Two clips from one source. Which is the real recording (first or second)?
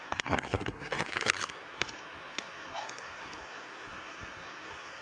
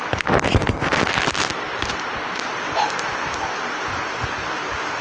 second